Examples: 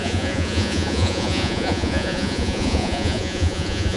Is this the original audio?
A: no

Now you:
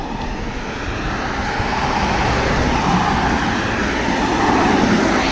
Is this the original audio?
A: yes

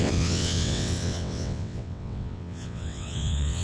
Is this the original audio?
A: no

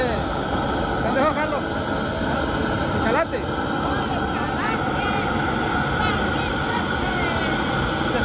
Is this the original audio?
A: yes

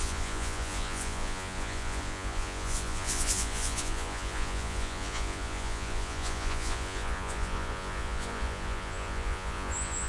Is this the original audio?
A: no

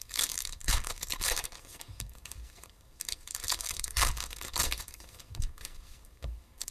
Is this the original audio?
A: no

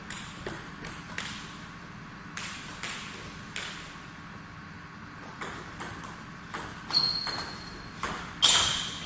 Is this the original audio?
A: yes